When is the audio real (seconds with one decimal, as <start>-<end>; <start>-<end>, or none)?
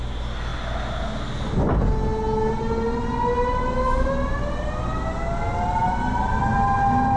0.0-7.2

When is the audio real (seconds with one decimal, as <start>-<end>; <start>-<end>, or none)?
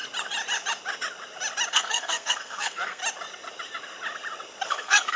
0.0-1.7; 3.0-4.7